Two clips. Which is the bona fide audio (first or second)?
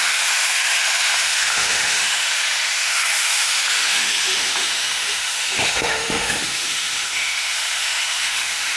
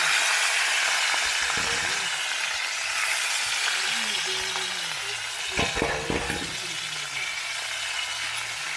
second